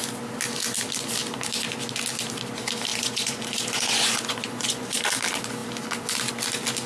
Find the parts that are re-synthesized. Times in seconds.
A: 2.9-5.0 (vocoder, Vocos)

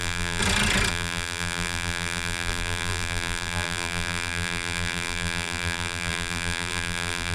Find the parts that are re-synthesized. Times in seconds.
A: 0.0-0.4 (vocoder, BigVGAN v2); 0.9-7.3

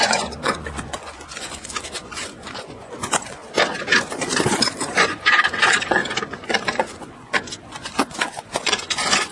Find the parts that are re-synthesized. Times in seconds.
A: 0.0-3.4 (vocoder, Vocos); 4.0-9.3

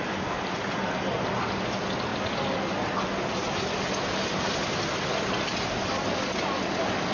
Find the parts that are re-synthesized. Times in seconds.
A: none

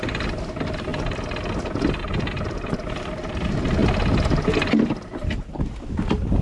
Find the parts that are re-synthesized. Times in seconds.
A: none